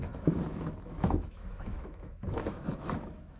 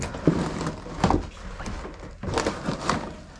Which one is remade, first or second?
first